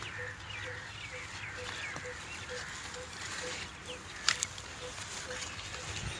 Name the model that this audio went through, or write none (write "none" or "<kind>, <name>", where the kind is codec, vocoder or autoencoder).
none